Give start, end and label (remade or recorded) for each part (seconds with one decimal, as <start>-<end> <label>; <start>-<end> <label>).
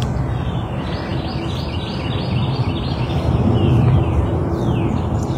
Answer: 0.0-1.1 recorded; 1.1-4.3 remade; 4.3-5.4 recorded